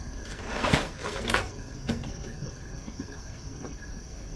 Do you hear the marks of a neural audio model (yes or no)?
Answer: yes